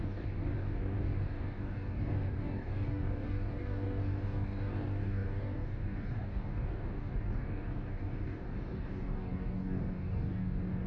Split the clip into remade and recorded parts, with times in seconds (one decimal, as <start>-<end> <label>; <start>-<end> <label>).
0.0-10.9 remade